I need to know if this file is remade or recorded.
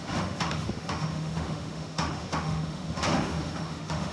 remade